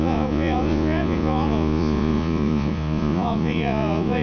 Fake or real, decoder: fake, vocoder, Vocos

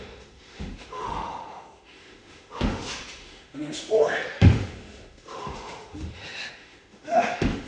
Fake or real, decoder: fake, autoencoder, DAC-VAE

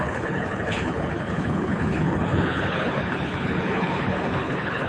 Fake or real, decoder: fake, codec, HILCodec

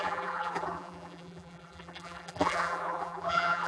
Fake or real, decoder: fake, vocoder, BigVGAN v2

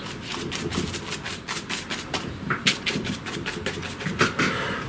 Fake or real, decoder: real